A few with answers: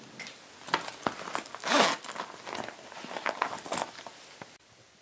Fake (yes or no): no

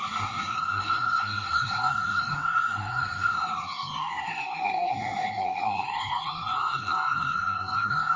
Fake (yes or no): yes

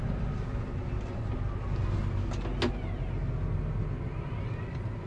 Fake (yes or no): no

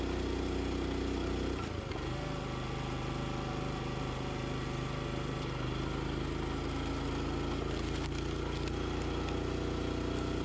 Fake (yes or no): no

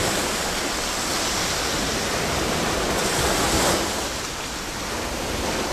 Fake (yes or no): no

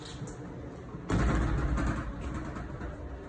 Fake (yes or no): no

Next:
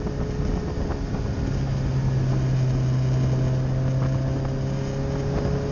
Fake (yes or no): no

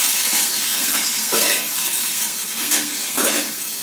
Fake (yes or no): yes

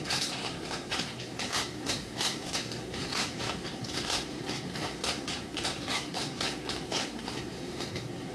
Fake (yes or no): yes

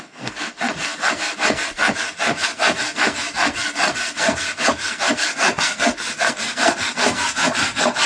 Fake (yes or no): yes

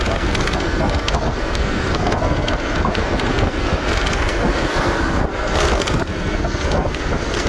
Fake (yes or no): yes